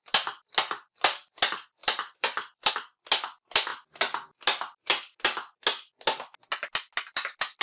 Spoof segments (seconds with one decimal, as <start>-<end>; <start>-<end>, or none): 1.8-2.7